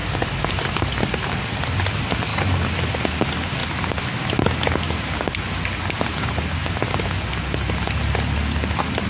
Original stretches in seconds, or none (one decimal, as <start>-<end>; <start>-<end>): 0.0-9.1